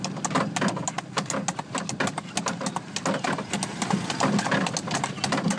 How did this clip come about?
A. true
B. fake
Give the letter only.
A